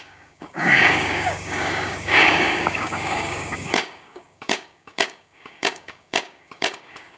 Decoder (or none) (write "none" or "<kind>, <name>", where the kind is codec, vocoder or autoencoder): codec, DAC